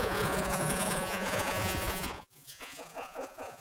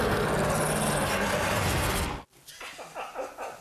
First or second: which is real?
second